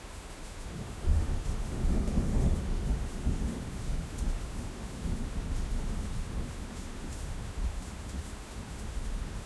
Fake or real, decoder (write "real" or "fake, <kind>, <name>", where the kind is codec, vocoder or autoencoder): fake, autoencoder, DAC-VAE